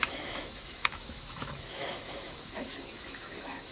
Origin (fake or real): fake